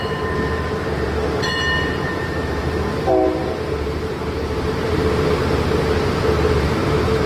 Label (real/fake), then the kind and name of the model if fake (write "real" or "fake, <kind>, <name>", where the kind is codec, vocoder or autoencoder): fake, vocoder, BigVGAN v2